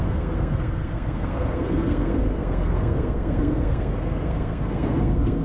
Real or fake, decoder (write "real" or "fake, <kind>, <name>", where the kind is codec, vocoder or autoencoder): fake, codec, SNAC